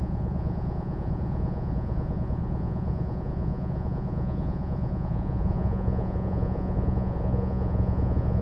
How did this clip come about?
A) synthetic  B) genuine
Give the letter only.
A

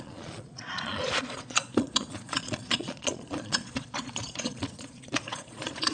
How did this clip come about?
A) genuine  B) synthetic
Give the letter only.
B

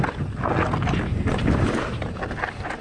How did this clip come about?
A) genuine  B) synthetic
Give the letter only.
A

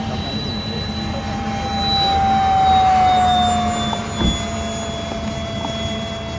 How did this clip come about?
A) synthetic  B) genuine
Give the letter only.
B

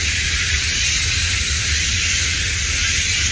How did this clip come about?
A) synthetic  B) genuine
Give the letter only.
B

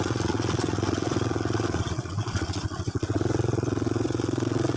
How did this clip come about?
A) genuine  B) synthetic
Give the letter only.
B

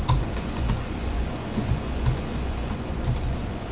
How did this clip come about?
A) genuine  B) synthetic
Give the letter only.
B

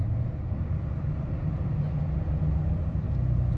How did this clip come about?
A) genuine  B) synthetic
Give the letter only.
A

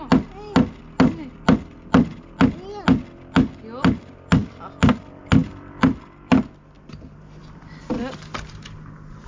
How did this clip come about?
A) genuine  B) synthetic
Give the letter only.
A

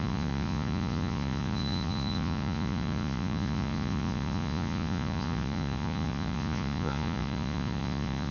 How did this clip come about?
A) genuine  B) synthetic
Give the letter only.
B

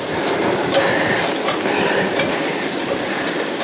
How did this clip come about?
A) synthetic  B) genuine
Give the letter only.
B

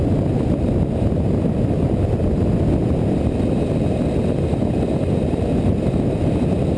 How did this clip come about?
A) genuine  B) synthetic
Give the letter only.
A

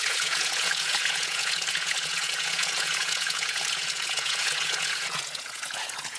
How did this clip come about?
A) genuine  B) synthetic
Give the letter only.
B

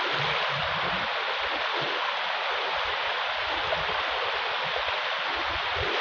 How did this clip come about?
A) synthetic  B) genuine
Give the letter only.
B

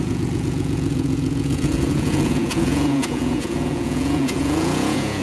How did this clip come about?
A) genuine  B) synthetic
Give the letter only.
B